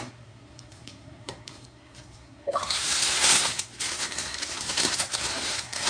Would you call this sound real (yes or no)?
no